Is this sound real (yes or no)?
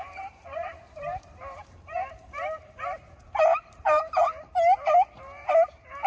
no